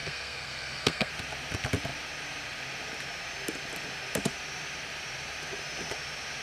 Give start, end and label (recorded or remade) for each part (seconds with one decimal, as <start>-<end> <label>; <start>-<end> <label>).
0.0-1.1 remade; 1.1-6.4 recorded